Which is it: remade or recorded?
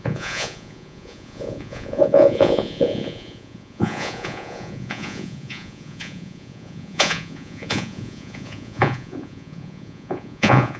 remade